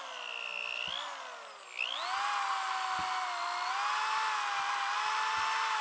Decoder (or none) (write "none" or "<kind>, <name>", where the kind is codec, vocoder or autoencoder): none